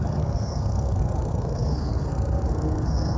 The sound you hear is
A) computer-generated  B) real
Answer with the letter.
A